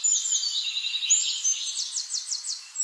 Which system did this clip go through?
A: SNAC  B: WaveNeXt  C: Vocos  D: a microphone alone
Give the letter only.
D